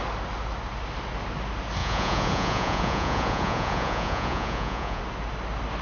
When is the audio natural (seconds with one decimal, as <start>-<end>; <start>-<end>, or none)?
0.0-1.8; 5.0-5.8